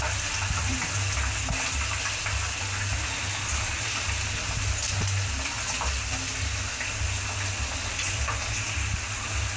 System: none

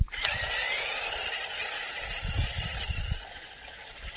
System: none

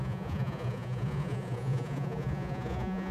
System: vocoder, Vocos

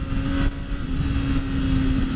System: none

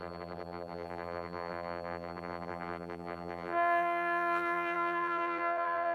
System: vocoder, BigVGAN v2